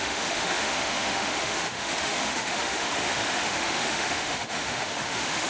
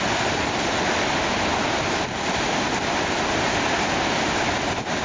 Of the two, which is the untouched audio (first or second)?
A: second